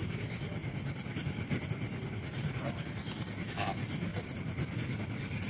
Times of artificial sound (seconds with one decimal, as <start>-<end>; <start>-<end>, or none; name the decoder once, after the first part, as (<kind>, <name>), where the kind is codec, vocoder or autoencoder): none